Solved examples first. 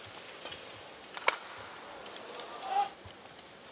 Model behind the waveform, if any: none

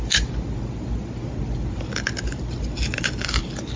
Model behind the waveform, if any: none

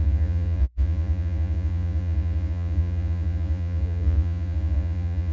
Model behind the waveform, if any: vocoder, Vocos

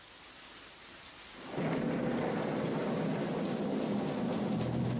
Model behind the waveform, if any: none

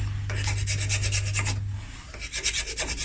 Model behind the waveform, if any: none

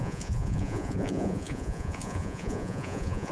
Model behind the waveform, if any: vocoder, Vocos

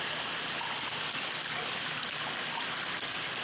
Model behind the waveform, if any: none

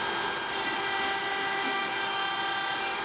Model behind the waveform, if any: none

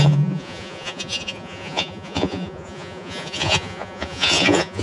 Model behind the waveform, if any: vocoder, Vocos